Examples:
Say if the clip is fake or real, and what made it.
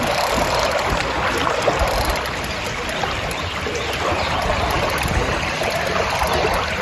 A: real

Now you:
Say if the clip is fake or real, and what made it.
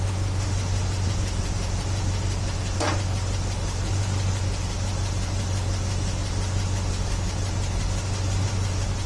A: real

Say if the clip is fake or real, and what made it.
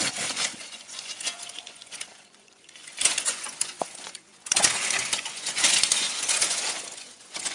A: fake, vocoder, Vocos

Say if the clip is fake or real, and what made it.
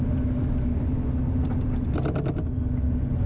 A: real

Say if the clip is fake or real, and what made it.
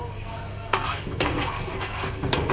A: fake, codec, SNAC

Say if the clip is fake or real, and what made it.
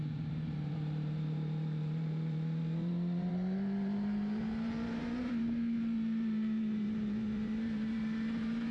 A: fake, vocoder, BigVGAN v2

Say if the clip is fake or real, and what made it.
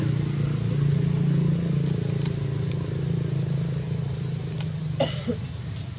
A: real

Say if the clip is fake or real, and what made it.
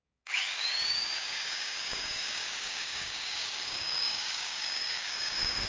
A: fake, codec, DAC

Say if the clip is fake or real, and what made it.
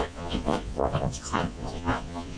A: fake, vocoder, Vocos